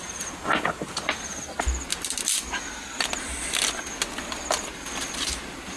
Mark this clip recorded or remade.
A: recorded